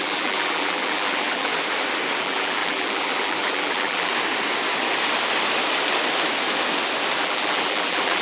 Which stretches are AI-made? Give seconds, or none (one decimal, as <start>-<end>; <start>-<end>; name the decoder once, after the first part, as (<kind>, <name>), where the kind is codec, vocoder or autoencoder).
0.0-1.5 (vocoder, BigVGAN v2); 2.2-4.1; 7.2-8.2